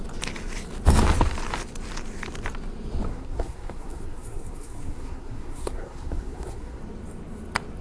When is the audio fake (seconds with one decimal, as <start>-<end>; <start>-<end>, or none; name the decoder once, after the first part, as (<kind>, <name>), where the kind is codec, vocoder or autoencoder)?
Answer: 3.1-6.8 (codec, SNAC)

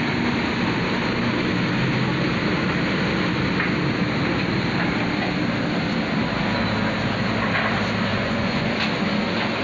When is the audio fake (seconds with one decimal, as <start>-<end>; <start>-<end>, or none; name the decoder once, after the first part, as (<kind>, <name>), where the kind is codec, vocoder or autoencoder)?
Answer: 8.1-8.7 (vocoder, Vocos)

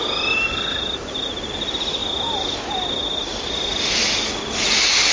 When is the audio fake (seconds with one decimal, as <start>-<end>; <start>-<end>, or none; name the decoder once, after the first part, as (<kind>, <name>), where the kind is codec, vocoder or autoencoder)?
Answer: none

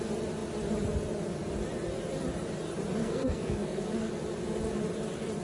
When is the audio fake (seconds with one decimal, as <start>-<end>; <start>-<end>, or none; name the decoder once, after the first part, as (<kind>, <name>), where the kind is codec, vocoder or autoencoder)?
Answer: 3.0-4.1 (codec, SNAC)